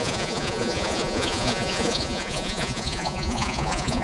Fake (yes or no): yes